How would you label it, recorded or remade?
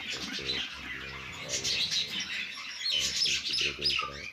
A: recorded